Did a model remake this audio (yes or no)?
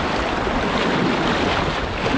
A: no